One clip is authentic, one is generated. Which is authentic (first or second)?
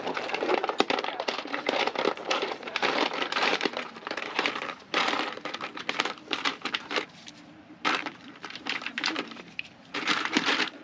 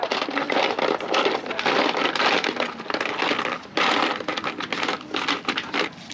second